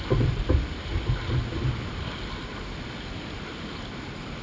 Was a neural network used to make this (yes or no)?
no